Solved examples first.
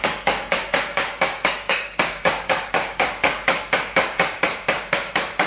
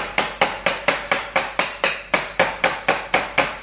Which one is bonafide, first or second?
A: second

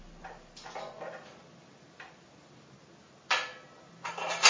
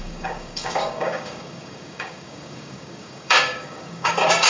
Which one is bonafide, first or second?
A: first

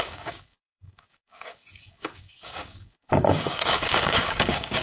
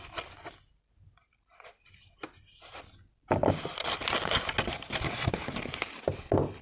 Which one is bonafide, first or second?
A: second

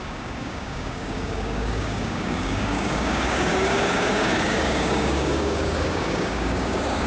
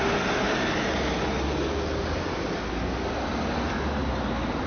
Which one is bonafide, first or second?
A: second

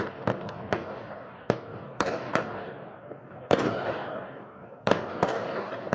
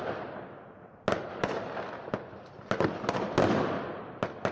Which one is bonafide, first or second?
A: second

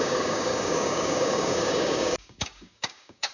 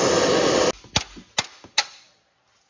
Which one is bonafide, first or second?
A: second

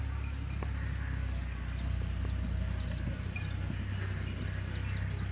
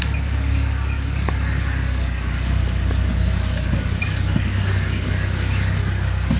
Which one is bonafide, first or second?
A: first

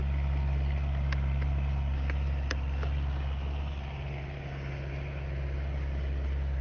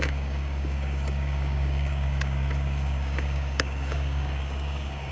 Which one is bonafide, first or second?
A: first